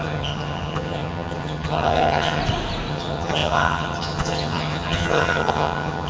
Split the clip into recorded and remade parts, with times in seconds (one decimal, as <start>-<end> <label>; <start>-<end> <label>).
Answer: 0.0-2.4 remade; 2.4-2.9 recorded; 2.9-6.1 remade